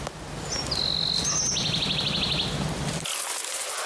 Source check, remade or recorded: recorded